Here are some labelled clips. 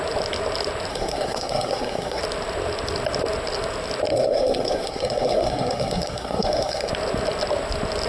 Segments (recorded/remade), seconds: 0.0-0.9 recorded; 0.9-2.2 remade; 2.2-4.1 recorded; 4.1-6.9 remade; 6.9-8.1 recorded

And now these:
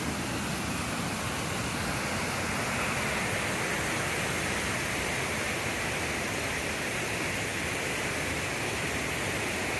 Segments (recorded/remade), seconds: 0.0-9.8 recorded

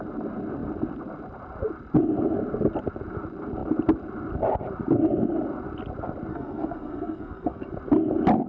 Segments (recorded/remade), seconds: 0.0-6.3 recorded; 6.3-7.7 remade; 7.7-8.5 recorded